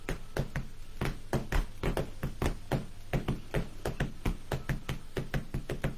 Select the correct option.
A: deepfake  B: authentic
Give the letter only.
B